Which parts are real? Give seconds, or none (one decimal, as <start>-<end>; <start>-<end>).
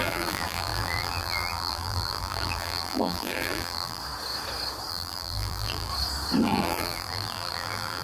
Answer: 4.0-4.9; 5.9-6.4